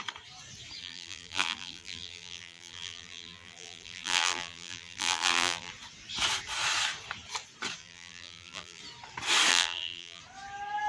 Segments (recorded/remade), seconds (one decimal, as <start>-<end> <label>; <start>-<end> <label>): 0.0-0.8 recorded; 0.8-5.7 remade; 5.7-7.8 recorded; 7.8-8.8 remade; 8.8-9.5 recorded; 9.5-10.2 remade; 10.2-10.9 recorded